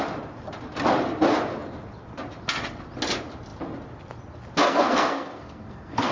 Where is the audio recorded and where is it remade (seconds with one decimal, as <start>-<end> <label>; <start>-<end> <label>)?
0.0-4.6 recorded; 4.6-6.1 remade